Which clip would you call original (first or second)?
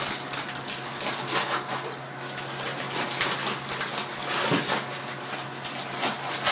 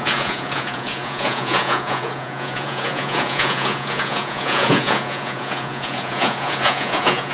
first